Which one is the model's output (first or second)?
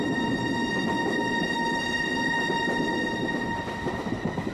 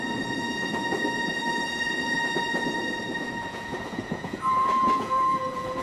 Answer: second